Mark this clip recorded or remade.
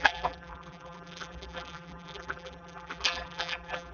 remade